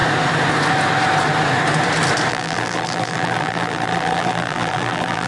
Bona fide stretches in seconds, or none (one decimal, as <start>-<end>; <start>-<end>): 0.0-2.3